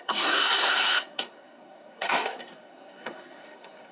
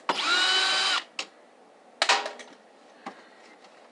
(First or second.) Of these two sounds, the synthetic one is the first